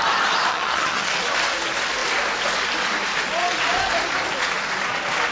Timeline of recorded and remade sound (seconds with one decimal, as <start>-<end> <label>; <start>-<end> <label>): 0.0-0.5 recorded; 0.5-1.1 remade; 1.1-5.3 recorded